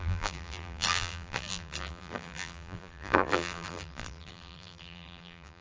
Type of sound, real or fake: fake